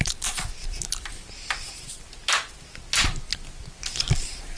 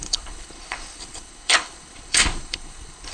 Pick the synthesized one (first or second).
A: second